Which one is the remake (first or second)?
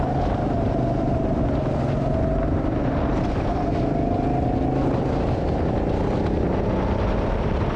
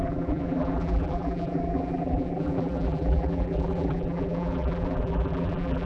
second